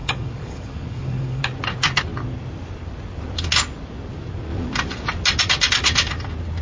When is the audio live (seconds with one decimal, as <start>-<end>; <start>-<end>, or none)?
1.4-6.6